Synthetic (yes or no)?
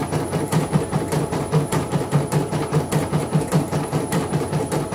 yes